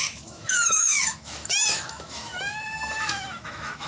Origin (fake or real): fake